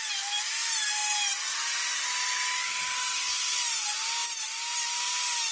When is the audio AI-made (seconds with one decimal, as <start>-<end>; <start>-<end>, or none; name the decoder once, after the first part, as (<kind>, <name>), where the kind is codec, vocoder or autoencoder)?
none